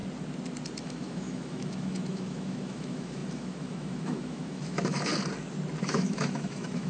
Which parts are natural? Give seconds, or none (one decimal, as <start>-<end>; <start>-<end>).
0.0-0.8; 5.1-5.8